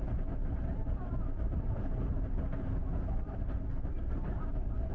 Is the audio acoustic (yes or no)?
no